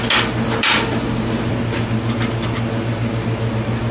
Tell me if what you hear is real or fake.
real